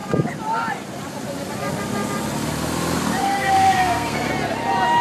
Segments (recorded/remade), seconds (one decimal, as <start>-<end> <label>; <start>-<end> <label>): 0.0-3.2 recorded; 3.2-4.3 remade; 4.3-5.0 recorded